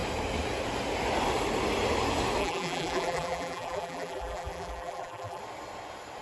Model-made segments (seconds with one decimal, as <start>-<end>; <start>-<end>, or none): 2.4-5.4